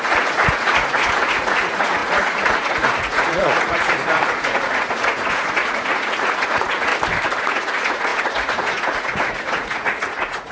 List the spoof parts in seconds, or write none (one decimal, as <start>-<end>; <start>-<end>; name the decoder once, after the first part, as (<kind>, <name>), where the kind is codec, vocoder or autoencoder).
0.0-6.9 (vocoder, Vocos); 7.4-10.5